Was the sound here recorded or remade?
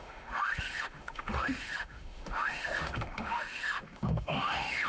remade